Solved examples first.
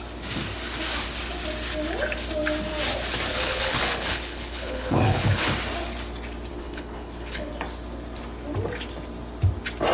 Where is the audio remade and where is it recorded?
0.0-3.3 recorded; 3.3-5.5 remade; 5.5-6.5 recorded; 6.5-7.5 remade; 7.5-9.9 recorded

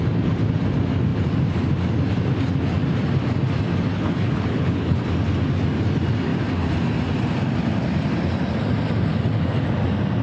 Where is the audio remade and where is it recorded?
0.0-3.9 recorded; 3.9-5.0 remade; 5.0-10.2 recorded

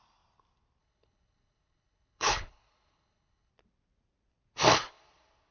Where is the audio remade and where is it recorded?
0.0-0.8 recorded; 0.8-3.5 remade; 3.5-5.5 recorded

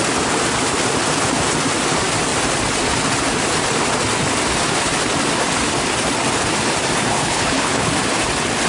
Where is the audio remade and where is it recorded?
0.0-7.1 recorded; 7.1-7.9 remade; 7.9-8.7 recorded

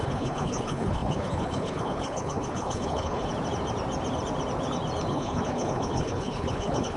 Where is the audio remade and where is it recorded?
0.0-3.3 remade; 3.3-5.1 recorded; 5.1-7.0 remade

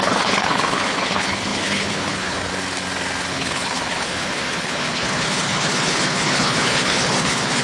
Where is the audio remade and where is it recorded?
0.0-2.5 remade; 2.5-3.3 recorded; 3.3-7.6 remade

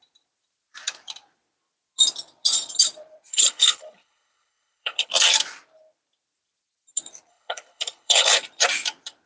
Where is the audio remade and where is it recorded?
0.0-3.3 recorded; 3.3-5.1 remade; 5.1-7.3 recorded; 7.3-8.3 remade; 8.3-9.3 recorded

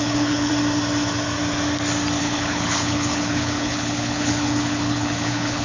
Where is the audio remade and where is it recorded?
0.0-0.5 remade; 0.5-2.2 recorded; 2.2-5.6 remade